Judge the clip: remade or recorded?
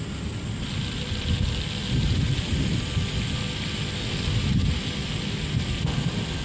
recorded